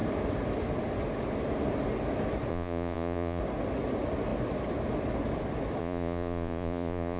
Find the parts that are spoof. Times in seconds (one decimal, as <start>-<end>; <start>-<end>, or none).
2.5-3.4; 5.8-7.2